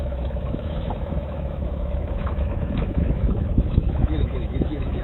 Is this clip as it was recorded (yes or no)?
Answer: no